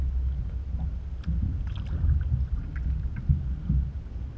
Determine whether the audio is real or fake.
real